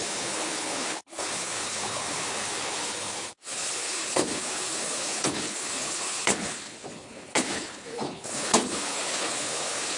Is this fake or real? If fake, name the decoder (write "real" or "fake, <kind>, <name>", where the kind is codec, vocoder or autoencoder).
fake, codec, HILCodec